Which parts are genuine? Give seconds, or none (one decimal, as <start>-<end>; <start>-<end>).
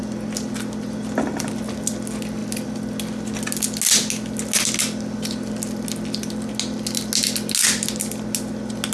0.0-8.9